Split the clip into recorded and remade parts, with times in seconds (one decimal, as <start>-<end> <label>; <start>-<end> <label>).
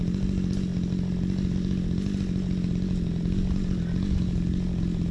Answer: 0.0-5.1 recorded